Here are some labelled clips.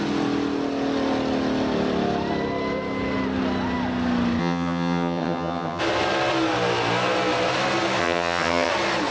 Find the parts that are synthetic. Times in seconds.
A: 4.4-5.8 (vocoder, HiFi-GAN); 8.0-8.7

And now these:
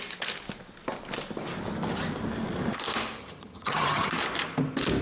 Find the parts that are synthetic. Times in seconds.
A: 3.2-4.1 (vocoder, HiFi-GAN)

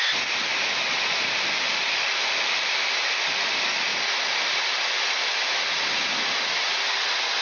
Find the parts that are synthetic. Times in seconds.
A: none

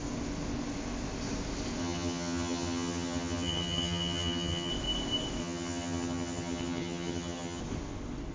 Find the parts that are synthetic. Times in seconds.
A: 1.8-4.7 (vocoder, HiFi-GAN); 5.4-7.6